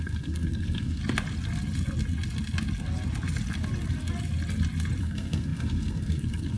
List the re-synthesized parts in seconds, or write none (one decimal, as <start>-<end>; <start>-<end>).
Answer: 0.0-1.0; 5.0-6.6